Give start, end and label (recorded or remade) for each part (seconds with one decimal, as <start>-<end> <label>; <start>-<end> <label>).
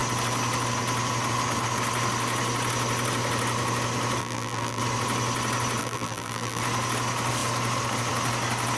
0.0-4.2 recorded; 4.2-4.8 remade; 4.8-5.8 recorded; 5.8-6.6 remade; 6.6-8.8 recorded